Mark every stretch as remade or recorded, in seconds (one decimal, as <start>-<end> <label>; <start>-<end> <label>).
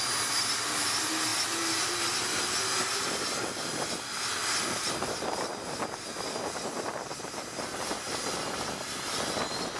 0.0-9.8 recorded